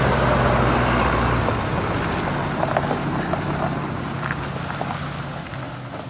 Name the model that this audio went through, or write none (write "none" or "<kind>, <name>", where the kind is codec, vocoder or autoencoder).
none